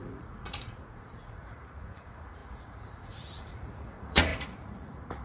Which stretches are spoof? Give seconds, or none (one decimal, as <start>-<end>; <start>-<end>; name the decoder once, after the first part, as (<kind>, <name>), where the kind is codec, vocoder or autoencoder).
0.0-5.2 (vocoder, Vocos)